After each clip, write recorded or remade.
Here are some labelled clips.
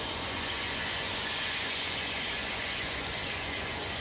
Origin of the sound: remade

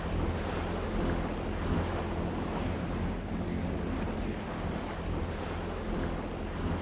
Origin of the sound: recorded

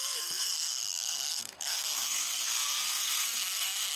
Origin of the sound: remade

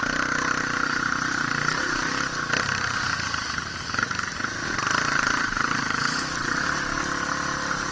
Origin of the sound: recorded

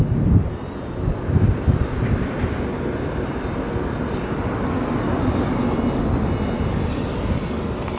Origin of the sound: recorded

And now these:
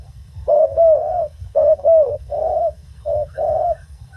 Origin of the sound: remade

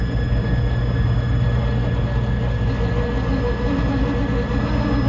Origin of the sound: recorded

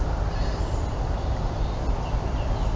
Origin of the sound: recorded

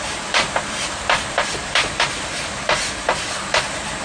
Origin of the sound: remade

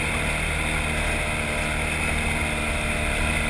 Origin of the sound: recorded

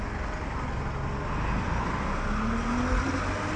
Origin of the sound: recorded